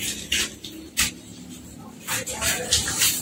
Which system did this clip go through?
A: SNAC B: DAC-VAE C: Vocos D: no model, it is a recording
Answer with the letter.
D